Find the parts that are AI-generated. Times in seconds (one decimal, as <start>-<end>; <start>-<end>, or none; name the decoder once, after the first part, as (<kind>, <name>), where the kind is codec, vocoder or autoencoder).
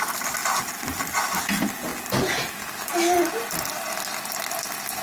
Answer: none